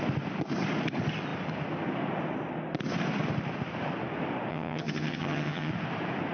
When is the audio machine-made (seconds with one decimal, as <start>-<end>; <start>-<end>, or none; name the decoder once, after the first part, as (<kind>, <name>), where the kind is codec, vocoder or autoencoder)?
4.5-5.7 (vocoder, HiFi-GAN)